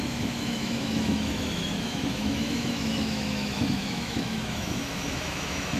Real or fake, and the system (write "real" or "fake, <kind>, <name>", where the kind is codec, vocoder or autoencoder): fake, autoencoder, DAC-VAE